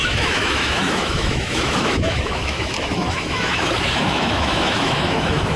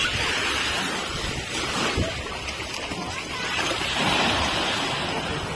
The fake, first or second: first